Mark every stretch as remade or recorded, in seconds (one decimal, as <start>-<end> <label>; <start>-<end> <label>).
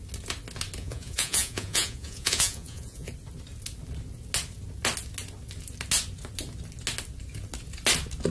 0.0-0.8 recorded; 0.8-3.1 remade; 3.1-8.3 recorded